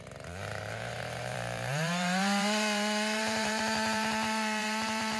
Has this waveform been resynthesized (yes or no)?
yes